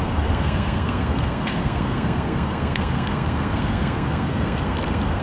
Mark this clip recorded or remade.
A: remade